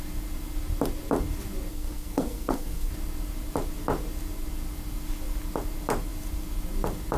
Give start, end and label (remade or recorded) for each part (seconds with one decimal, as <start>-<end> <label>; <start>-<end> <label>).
0.0-1.7 recorded; 1.7-2.9 remade; 2.9-7.2 recorded